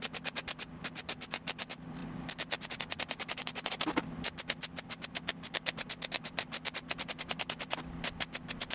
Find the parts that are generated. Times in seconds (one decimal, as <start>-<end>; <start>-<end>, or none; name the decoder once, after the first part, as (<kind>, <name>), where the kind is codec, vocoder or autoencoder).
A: none